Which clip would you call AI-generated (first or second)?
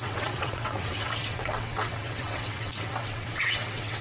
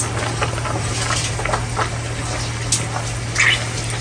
first